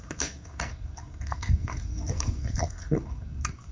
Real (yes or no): no